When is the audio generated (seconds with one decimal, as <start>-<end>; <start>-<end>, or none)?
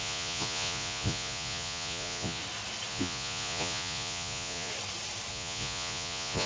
0.0-2.4; 2.9-4.7; 5.3-6.5